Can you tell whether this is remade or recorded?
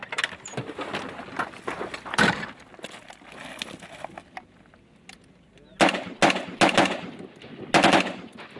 recorded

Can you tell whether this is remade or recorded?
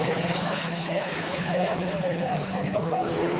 remade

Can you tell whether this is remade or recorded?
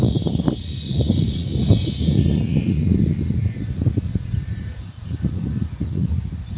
remade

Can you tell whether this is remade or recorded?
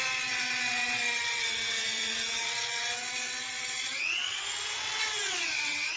remade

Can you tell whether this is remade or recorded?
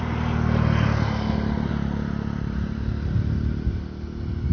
recorded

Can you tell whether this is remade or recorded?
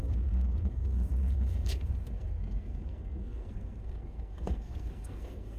remade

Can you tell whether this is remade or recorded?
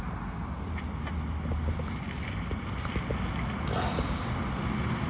recorded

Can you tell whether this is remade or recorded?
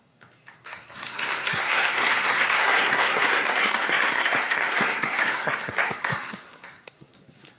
remade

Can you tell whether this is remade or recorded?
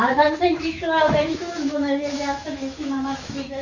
remade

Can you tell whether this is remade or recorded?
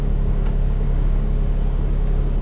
remade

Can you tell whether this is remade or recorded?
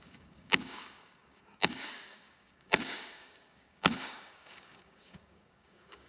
remade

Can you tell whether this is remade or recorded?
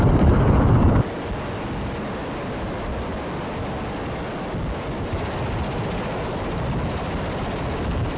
recorded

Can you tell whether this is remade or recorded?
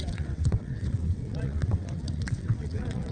remade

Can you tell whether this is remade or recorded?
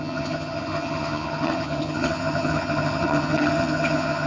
remade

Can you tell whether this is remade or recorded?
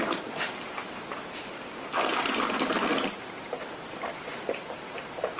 remade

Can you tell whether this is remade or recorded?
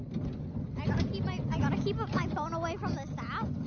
recorded